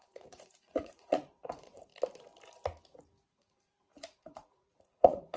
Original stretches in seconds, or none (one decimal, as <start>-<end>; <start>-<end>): 1.9-3.3